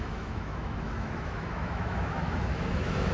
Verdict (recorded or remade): remade